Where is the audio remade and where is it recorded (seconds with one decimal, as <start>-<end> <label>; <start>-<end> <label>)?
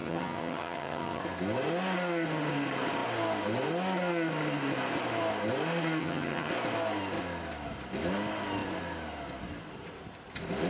0.0-1.2 remade; 1.2-6.0 recorded; 6.0-6.5 remade; 6.5-10.7 recorded